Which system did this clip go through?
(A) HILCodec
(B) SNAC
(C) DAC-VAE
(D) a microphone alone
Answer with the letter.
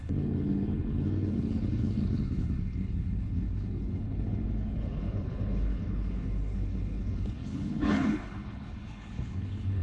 A